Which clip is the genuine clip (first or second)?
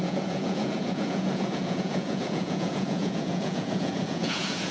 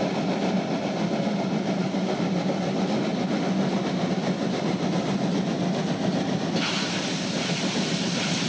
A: second